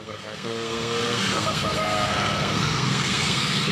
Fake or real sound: fake